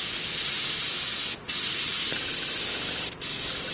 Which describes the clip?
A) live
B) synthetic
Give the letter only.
A